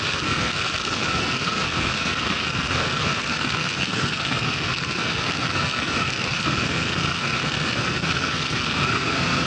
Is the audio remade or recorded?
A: remade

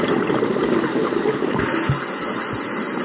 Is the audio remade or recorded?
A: recorded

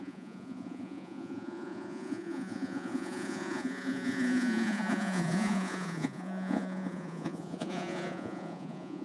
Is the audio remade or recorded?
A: remade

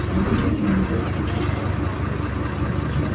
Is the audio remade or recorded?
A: recorded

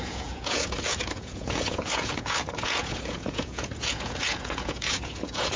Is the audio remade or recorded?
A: remade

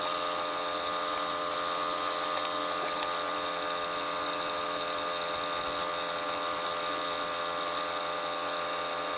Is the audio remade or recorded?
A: recorded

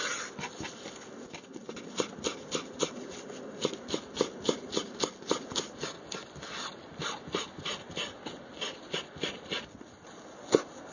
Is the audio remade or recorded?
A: recorded